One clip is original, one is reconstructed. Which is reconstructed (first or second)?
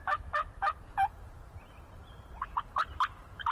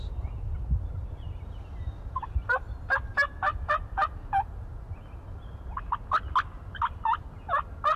first